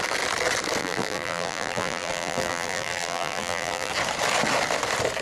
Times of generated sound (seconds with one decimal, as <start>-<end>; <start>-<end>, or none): 0.8-3.9

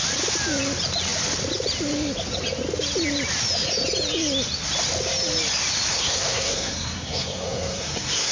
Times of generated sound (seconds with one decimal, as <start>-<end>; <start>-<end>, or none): 5.9-8.3